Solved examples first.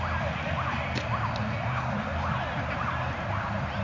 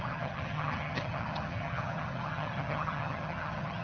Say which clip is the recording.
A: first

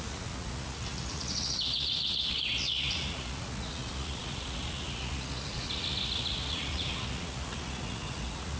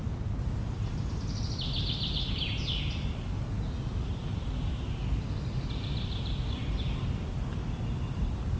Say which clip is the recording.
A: second